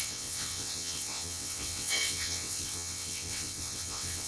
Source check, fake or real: fake